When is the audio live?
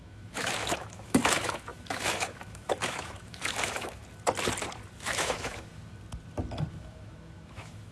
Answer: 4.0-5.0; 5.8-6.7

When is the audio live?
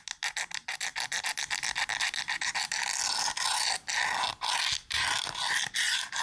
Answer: 0.0-6.2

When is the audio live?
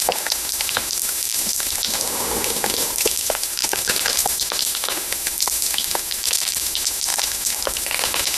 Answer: none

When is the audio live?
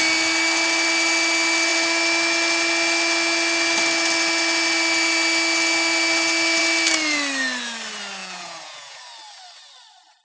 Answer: 0.0-8.2; 9.0-10.2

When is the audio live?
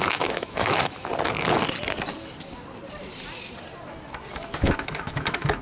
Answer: 1.1-4.5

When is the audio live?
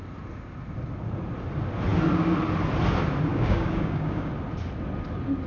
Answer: 0.0-3.3; 4.3-5.5